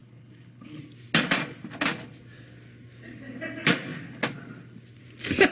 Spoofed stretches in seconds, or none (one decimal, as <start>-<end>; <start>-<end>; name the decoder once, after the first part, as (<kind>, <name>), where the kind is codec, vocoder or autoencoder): 0.0-0.8 (codec, HILCodec)